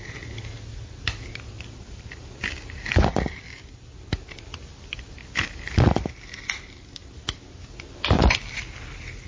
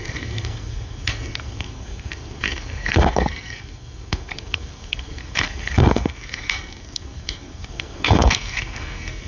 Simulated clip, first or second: second